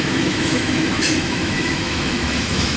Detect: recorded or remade remade